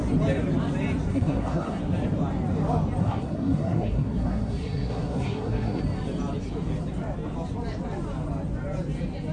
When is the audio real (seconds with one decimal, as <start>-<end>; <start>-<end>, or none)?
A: 0.0-1.1; 1.8-3.0; 5.8-9.3